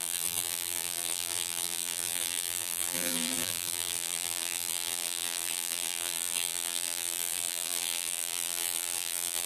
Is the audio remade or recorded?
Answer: remade